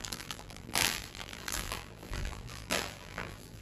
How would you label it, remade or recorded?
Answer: remade